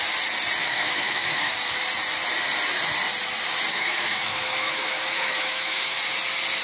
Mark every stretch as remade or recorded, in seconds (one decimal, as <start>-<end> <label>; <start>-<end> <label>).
0.0-0.6 recorded; 0.6-1.5 remade; 1.5-3.7 recorded; 3.7-6.0 remade; 6.0-6.6 recorded